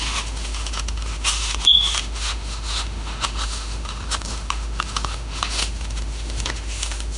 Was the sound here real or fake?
fake